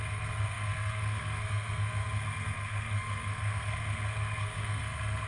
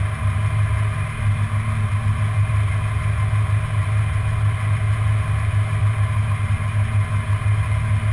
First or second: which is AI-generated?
first